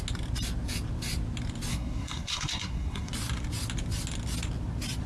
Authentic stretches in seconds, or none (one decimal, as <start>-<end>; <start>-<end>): 0.0-1.7; 3.1-5.1